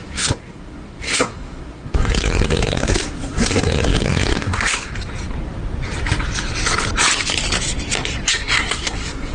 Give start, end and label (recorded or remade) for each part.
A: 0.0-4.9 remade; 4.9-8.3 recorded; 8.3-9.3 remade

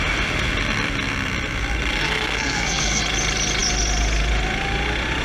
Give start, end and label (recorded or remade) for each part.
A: 0.0-2.0 recorded; 2.0-3.0 remade; 3.0-5.2 recorded